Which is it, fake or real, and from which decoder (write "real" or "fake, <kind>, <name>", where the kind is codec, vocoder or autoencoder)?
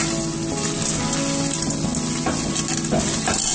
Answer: real